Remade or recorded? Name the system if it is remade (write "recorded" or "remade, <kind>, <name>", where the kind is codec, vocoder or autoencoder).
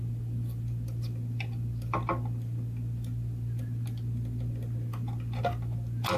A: recorded